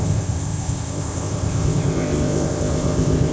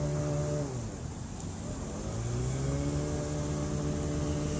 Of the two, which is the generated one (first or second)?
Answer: first